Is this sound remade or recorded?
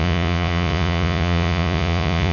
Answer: remade